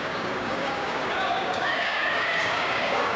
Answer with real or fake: fake